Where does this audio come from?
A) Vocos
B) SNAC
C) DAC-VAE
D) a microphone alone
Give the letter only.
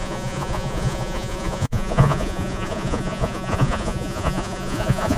A